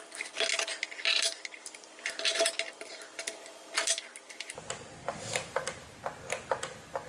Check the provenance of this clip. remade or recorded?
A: recorded